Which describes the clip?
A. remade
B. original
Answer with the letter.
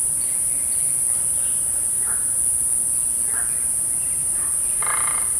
B